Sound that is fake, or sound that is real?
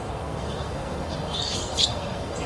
fake